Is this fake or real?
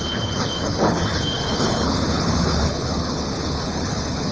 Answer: fake